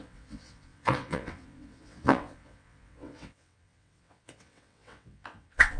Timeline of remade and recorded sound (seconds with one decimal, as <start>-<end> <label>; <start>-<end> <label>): 0.0-5.8 remade